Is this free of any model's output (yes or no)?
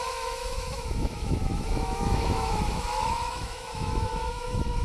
no